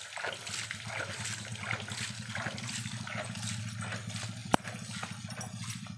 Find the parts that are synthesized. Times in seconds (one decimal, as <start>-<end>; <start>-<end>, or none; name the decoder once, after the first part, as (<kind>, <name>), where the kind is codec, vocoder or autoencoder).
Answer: none